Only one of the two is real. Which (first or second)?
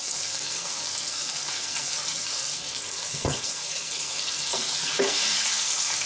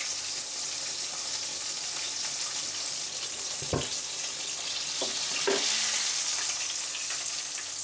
second